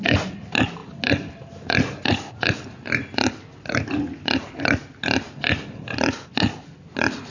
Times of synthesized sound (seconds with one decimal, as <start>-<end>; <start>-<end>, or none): none